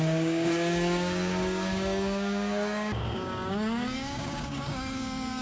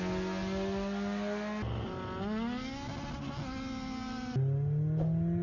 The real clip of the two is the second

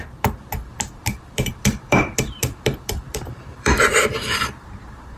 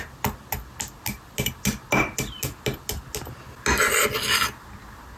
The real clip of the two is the second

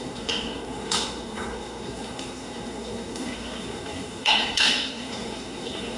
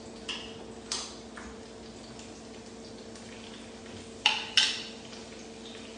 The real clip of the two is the second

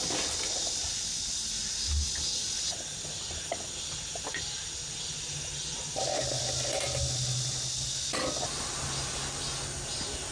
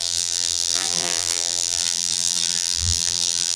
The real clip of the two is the first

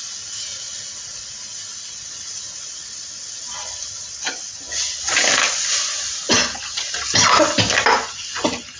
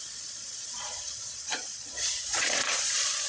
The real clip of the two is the first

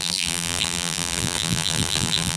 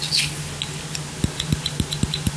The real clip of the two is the second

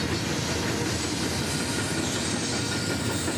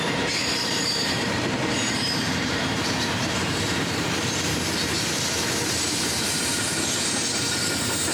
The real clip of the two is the first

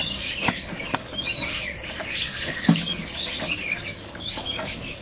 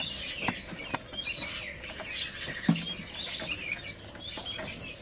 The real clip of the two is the second